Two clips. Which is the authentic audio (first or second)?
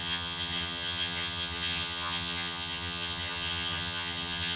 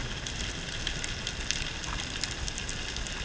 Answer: second